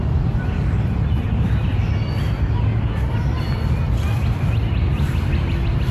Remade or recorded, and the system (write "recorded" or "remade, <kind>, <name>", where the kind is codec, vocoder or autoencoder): recorded